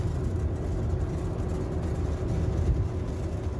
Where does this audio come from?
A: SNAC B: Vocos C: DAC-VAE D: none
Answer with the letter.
D